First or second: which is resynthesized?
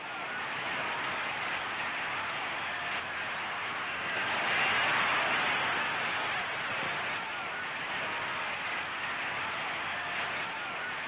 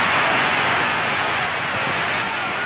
second